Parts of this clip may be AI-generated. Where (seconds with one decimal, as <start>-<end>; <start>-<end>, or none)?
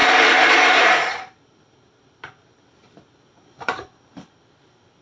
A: 0.0-5.0